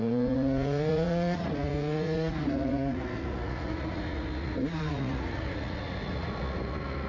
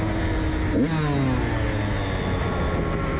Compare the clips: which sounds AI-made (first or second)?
first